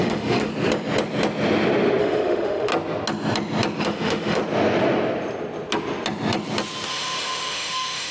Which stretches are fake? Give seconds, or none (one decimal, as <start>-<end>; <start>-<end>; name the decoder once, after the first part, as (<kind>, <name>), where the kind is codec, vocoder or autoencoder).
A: 0.0-0.5 (autoencoder, DAC-VAE); 2.0-2.7; 3.8-4.4; 6.9-8.1